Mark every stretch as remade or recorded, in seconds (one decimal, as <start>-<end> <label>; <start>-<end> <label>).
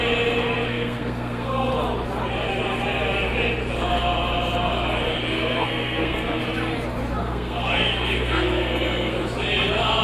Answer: 0.0-0.7 recorded; 0.7-1.7 remade; 1.7-5.3 recorded; 5.3-6.4 remade; 6.4-7.2 recorded; 7.2-9.2 remade; 9.2-10.0 recorded